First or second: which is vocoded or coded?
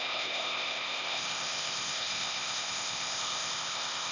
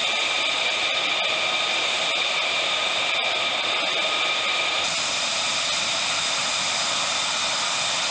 first